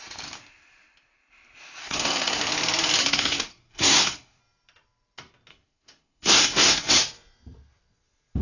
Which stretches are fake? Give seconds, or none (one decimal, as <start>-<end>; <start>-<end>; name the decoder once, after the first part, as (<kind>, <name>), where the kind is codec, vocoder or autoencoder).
1.8-2.4 (codec, SNAC); 3.0-4.4; 5.5-6.9